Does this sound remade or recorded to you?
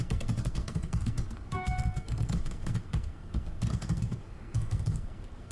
remade